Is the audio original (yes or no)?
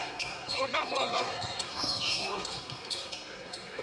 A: no